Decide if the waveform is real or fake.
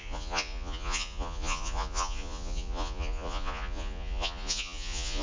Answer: fake